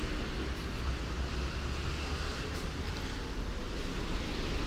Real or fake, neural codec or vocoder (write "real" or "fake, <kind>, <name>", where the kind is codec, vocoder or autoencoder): real